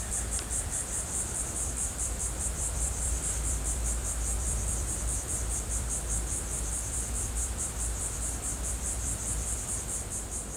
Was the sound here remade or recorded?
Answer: remade